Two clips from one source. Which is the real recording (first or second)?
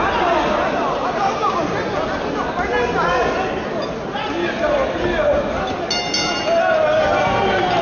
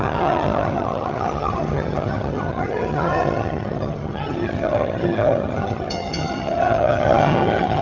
first